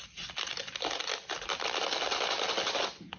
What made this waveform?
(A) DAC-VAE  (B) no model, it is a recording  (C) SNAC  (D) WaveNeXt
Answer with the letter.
B